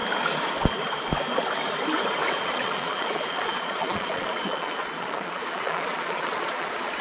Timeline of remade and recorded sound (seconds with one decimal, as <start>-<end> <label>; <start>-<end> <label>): 0.0-2.3 recorded; 2.3-7.0 remade